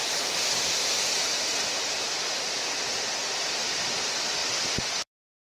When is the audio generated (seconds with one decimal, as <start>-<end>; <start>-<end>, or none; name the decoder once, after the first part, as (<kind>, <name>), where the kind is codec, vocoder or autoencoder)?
0.0-2.6 (vocoder, BigVGAN v2); 3.7-4.4; 5.0-5.4